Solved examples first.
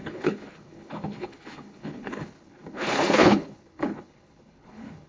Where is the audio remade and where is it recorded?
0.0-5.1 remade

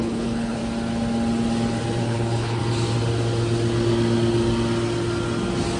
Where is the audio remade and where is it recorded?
0.0-0.6 remade; 0.6-2.0 recorded; 2.0-2.6 remade; 2.6-5.8 recorded

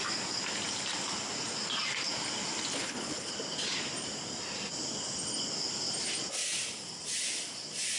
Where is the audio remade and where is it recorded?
0.0-2.7 recorded; 2.7-3.3 remade; 3.3-8.0 recorded